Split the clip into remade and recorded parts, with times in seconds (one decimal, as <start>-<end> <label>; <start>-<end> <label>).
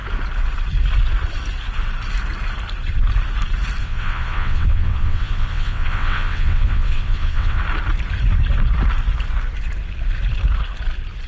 0.0-3.8 recorded; 3.8-7.6 remade; 7.6-11.3 recorded